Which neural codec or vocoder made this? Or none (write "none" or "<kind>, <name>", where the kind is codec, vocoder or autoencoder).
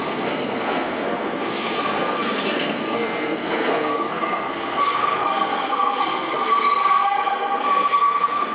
codec, SNAC